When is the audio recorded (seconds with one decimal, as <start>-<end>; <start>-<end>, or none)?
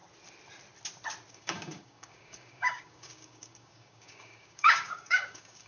0.0-1.3